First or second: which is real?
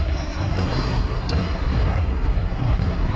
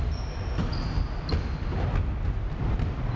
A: second